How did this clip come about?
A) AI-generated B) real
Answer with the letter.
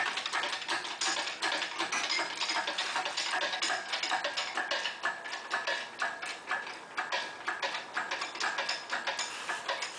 B